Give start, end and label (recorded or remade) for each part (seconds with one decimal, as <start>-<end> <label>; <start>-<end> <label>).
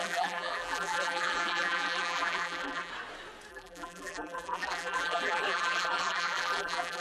0.0-2.9 remade; 2.9-3.5 recorded; 3.5-7.0 remade